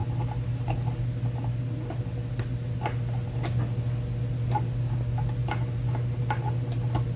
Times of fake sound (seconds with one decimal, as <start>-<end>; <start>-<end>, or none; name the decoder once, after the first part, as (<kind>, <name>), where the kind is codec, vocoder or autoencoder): none